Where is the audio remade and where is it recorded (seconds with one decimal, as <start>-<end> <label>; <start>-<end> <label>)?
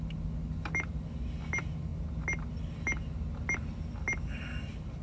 0.0-5.0 recorded